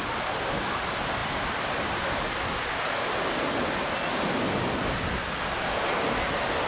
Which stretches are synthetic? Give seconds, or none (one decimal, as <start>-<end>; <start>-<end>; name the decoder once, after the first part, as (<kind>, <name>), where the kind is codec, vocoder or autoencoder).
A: none